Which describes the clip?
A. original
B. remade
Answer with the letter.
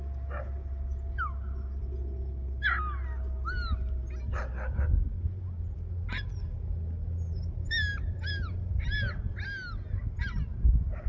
A